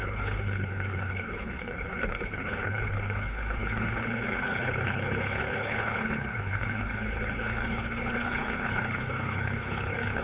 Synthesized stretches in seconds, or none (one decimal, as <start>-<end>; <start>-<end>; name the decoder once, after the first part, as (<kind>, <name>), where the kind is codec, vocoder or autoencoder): 0.0-10.2 (codec, HILCodec)